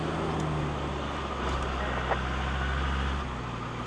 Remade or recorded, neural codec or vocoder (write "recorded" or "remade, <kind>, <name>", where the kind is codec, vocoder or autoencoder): recorded